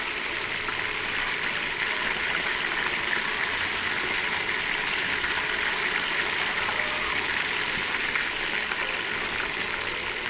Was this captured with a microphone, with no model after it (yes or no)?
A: yes